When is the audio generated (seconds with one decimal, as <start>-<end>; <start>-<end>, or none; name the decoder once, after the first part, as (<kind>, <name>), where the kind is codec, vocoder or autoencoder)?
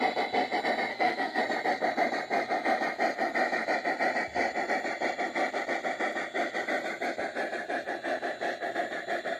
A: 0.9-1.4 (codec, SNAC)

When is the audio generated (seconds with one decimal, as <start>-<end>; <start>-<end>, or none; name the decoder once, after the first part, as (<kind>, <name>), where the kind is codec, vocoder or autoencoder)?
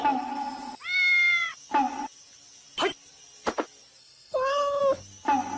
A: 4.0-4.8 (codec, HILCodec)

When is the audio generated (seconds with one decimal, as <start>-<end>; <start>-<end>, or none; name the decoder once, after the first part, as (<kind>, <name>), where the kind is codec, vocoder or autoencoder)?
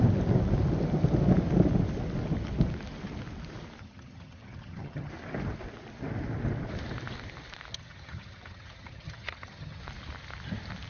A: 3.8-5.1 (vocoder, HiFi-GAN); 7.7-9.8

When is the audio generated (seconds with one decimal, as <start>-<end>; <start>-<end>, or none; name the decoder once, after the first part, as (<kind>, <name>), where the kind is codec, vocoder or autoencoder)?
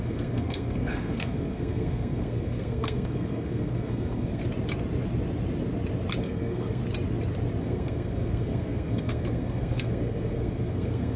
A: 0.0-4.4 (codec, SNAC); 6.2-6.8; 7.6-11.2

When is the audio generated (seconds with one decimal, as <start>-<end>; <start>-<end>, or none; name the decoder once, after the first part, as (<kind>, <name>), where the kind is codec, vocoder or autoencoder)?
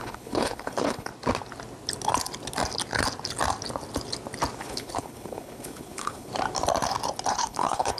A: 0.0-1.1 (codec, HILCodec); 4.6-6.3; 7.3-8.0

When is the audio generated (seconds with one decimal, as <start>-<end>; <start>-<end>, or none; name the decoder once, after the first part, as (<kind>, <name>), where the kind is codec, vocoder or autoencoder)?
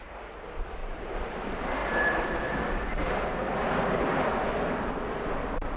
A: 0.8-1.4 (vocoder, BigVGAN v2)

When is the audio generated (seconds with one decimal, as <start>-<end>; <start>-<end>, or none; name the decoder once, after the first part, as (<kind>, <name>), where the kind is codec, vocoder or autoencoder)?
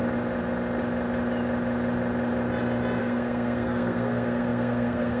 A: 3.0-5.2 (codec, SNAC)